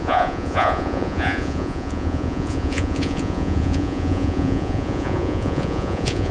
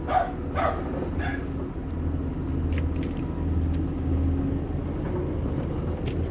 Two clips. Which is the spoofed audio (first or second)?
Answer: first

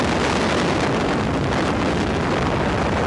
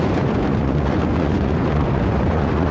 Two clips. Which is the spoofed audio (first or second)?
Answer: second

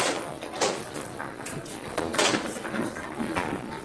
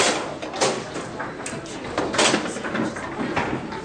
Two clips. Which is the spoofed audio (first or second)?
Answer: first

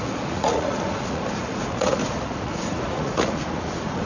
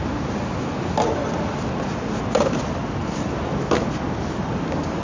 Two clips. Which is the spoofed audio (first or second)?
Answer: first